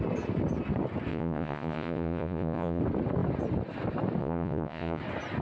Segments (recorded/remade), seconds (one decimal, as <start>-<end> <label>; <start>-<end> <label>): 0.0-1.1 recorded; 1.1-2.8 remade; 2.8-4.2 recorded; 4.2-5.0 remade; 5.0-5.4 recorded